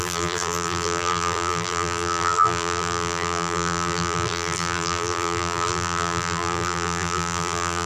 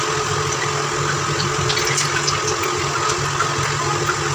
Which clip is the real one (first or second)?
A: second